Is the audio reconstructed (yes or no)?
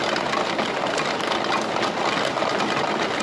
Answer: no